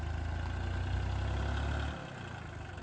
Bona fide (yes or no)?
yes